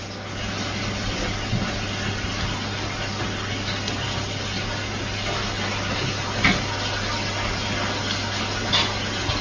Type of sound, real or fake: real